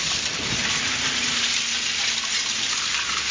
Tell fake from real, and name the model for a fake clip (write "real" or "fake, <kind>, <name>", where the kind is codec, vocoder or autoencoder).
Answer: real